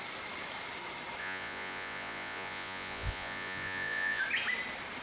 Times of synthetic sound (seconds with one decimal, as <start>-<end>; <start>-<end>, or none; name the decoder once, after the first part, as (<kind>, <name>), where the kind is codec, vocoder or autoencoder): 1.2-4.2 (vocoder, Vocos)